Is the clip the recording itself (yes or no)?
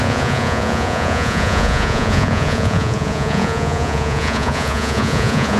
no